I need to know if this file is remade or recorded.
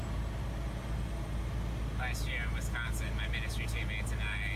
recorded